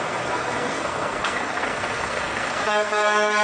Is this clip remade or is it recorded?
remade